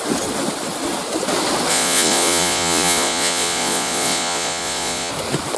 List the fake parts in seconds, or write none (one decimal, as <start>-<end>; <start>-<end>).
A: 1.7-5.1